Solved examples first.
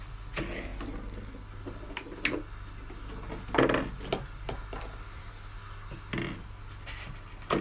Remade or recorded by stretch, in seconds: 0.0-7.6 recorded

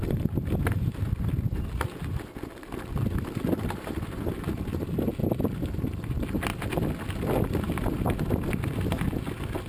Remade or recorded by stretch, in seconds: 0.0-9.7 recorded

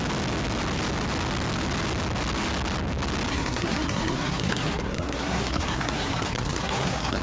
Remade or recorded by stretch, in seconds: 0.0-3.3 recorded; 3.3-7.2 remade

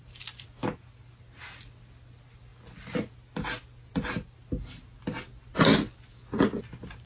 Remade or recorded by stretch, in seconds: 0.0-7.1 recorded